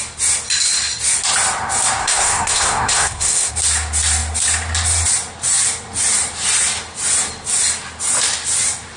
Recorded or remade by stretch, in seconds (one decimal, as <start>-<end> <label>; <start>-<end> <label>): 0.0-2.0 recorded; 2.0-3.5 remade; 3.5-9.0 recorded